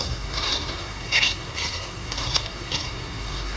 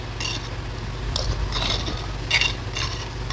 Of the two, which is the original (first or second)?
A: second